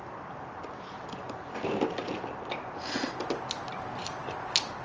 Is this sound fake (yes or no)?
no